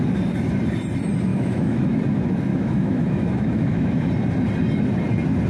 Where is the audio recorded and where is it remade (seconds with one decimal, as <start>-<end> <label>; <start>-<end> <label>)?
0.0-1.3 recorded; 1.3-2.0 remade; 2.0-2.5 recorded; 2.5-4.1 remade; 4.1-5.5 recorded